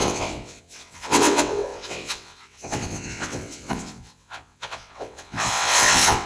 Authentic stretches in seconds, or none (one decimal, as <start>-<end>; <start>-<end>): none